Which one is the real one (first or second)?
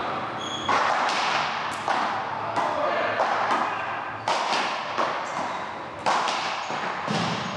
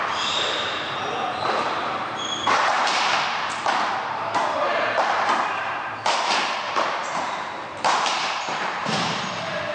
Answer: first